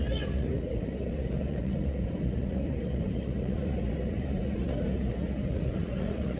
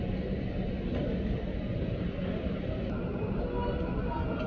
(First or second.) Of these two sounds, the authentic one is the second